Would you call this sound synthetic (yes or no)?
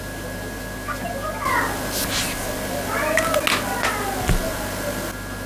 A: no